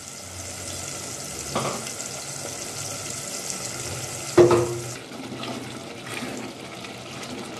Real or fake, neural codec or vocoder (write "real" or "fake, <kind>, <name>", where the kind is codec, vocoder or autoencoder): real